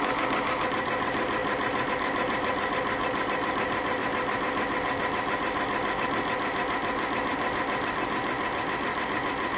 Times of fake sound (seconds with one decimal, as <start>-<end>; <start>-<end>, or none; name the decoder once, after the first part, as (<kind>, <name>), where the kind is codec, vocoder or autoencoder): none